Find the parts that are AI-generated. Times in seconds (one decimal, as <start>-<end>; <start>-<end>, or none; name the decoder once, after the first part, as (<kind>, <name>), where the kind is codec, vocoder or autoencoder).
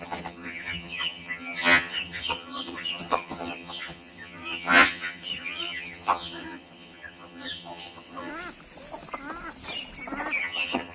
0.0-8.3 (vocoder, HiFi-GAN); 10.4-10.9